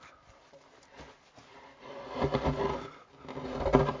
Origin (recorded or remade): recorded